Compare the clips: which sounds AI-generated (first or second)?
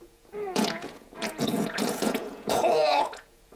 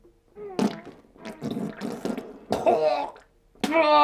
first